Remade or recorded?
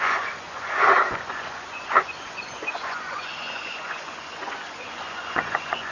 remade